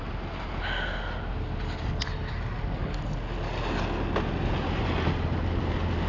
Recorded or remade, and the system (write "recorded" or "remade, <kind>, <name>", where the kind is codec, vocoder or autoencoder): recorded